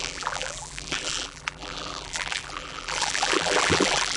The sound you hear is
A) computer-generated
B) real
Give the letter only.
A